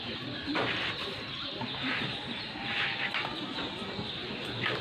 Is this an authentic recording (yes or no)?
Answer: no